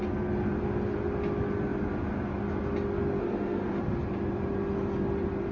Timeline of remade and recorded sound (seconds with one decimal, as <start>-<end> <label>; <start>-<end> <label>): 0.0-3.2 recorded; 3.2-3.8 remade; 3.8-5.5 recorded